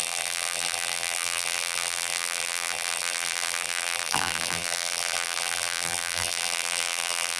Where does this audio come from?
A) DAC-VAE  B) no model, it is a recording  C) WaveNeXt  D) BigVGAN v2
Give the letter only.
D